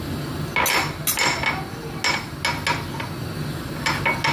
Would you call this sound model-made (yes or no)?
no